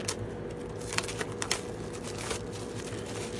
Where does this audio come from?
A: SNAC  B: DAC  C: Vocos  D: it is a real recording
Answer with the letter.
D